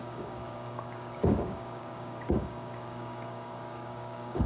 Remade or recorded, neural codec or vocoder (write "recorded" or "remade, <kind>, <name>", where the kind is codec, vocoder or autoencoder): remade, codec, DAC